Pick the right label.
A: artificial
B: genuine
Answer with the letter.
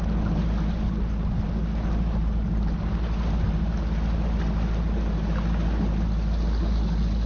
B